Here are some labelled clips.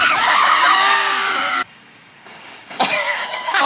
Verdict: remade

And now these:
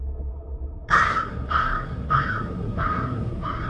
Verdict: remade